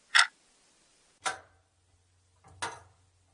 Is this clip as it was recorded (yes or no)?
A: yes